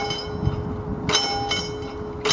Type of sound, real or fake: real